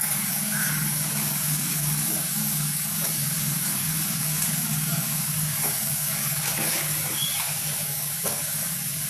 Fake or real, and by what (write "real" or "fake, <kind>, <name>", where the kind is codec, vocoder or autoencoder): fake, codec, DAC